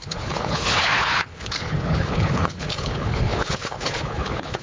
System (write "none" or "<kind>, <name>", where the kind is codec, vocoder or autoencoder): codec, HILCodec